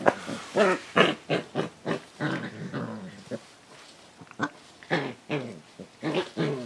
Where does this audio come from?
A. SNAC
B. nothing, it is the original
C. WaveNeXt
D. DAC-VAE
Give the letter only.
B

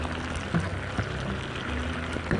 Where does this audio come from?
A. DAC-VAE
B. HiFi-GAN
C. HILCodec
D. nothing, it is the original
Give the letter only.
D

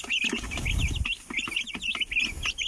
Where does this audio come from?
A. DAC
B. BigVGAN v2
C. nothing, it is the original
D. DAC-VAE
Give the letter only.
C